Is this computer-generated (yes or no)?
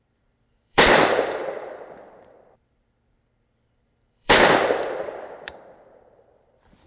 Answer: yes